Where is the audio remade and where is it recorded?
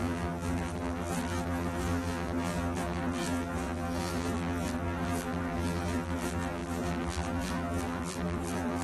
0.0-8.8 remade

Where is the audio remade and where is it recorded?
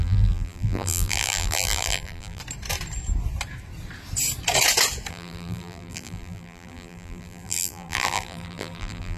0.0-2.4 remade; 2.4-5.1 recorded; 5.1-9.2 remade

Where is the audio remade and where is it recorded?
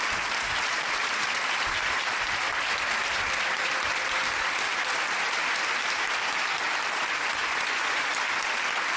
0.0-7.4 recorded; 7.4-8.1 remade; 8.1-9.0 recorded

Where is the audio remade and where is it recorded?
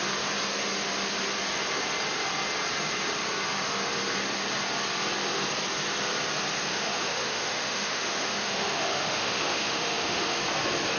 0.0-6.7 recorded; 6.7-10.4 remade; 10.4-11.0 recorded